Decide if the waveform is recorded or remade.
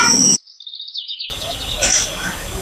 remade